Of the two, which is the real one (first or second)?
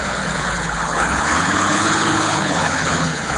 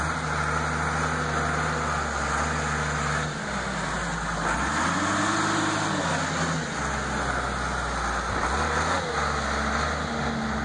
second